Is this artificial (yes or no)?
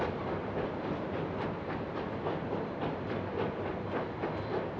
no